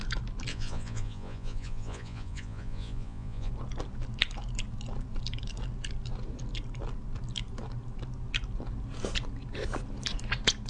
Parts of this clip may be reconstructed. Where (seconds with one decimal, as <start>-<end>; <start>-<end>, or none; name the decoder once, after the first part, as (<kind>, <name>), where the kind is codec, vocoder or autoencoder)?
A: 0.5-3.5 (vocoder, Vocos)